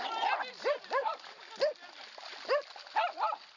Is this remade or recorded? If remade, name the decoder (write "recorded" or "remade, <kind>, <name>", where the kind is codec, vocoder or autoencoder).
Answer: recorded